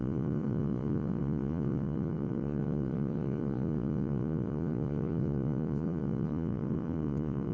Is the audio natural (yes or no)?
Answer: no